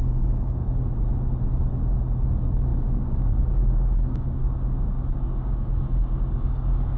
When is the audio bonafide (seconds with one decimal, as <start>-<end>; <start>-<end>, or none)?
0.6-2.3